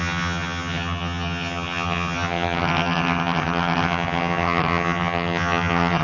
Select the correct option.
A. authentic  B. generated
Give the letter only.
B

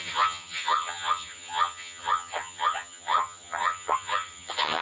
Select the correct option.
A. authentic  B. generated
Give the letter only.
B